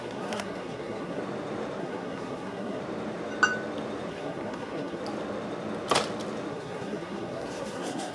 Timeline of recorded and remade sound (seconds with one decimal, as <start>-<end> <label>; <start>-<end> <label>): 0.0-1.2 remade; 1.2-1.8 recorded; 1.8-2.8 remade; 2.8-4.1 recorded; 4.1-5.0 remade; 5.0-6.5 recorded; 6.5-8.1 remade